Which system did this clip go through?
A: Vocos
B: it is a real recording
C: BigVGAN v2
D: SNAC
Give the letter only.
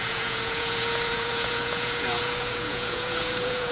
A